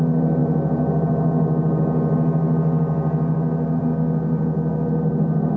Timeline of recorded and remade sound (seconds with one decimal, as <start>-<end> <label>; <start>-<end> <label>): 0.0-5.6 recorded